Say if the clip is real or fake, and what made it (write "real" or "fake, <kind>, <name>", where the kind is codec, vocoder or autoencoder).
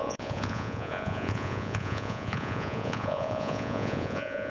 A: fake, vocoder, Vocos